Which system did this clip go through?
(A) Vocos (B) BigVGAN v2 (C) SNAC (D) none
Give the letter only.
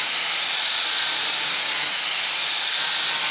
D